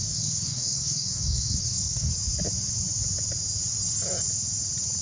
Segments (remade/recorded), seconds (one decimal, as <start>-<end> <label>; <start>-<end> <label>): 0.0-2.1 remade; 2.1-5.0 recorded